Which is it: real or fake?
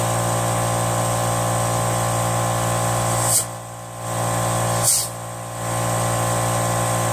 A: real